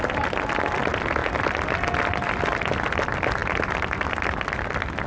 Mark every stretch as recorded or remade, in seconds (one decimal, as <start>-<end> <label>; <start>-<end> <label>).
0.0-5.1 recorded